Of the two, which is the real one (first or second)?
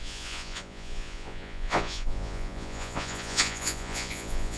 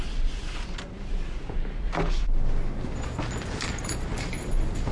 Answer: second